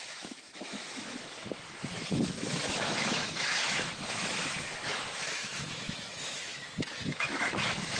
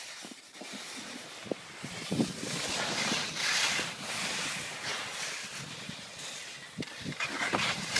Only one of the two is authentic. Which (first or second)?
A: second